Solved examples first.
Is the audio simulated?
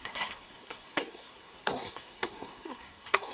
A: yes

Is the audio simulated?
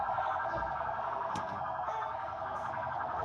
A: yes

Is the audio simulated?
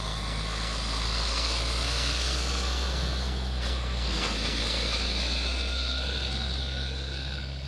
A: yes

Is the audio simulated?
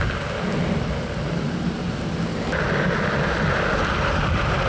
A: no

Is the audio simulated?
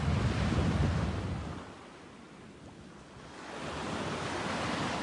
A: no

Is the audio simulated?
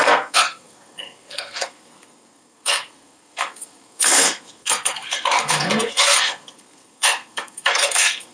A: yes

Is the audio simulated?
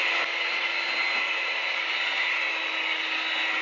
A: no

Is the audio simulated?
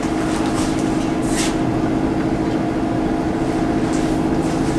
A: no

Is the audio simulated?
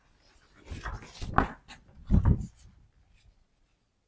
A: no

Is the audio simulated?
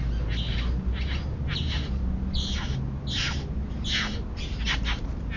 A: no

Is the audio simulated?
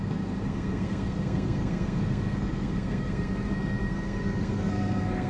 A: yes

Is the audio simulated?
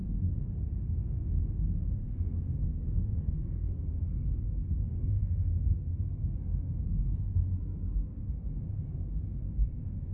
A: yes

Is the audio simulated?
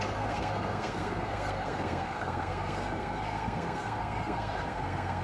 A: yes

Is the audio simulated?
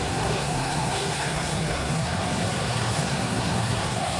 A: yes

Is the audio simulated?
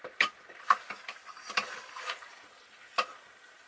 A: no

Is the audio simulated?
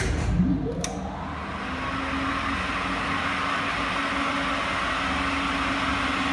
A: no